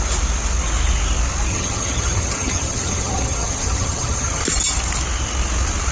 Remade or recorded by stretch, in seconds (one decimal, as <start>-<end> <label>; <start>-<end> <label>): 0.0-1.5 recorded; 1.5-4.4 remade; 4.4-5.9 recorded